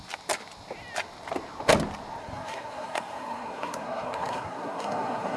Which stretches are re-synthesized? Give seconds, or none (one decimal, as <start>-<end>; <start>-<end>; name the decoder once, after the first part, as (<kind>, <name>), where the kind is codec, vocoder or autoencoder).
2.2-5.4 (codec, SNAC)

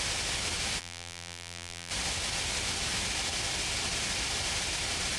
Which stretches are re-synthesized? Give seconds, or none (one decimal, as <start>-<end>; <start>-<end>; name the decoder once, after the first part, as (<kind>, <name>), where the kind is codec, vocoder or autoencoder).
0.8-1.9 (vocoder, BigVGAN v2)

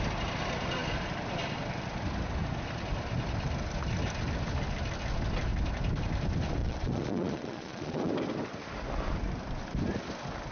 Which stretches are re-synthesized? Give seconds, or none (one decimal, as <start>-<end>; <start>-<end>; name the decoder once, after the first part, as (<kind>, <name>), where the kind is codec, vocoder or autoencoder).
6.6-8.1 (vocoder, Vocos)

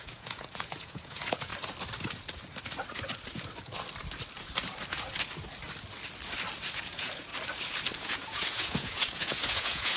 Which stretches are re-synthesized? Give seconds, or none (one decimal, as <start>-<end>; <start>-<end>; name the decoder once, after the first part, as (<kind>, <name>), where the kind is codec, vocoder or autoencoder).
0.0-1.5 (vocoder, Vocos); 6.7-7.3; 8.0-10.0

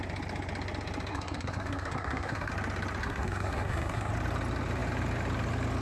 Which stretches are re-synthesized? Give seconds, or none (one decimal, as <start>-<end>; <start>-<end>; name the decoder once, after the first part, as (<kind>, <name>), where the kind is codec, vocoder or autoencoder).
1.1-2.5 (codec, SNAC); 3.0-4.1